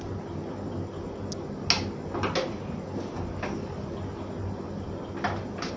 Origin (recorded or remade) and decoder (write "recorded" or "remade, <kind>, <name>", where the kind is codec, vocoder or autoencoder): recorded